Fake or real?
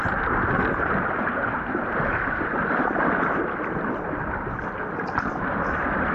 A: real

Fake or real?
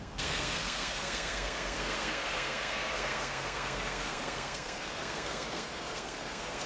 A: fake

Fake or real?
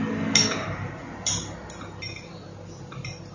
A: real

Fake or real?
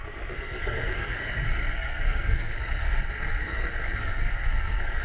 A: fake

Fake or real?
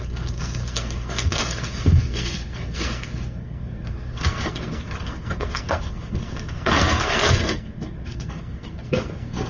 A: fake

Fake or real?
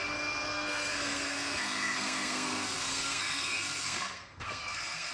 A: fake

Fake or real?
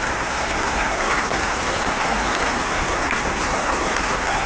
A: fake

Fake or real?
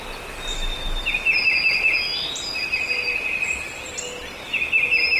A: real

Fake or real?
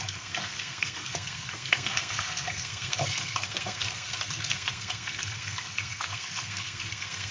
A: fake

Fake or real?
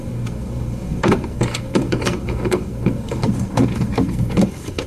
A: fake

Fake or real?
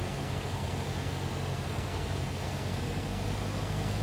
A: fake